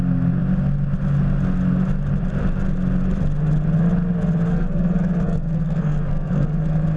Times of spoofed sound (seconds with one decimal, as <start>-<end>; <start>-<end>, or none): 4.5-6.6